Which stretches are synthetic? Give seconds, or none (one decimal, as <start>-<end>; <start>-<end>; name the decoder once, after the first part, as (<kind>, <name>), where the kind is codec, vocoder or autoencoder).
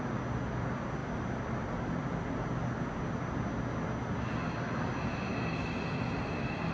none